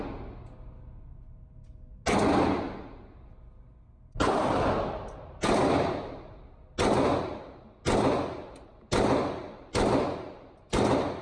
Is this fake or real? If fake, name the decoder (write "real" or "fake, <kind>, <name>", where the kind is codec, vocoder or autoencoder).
real